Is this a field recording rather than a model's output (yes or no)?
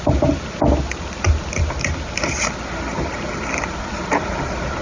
yes